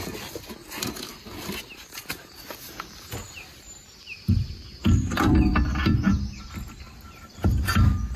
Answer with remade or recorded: recorded